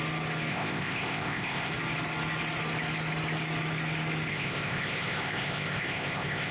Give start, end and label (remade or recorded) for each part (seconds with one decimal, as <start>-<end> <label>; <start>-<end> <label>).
0.0-0.5 recorded; 0.5-1.7 remade; 1.7-4.3 recorded; 4.3-6.5 remade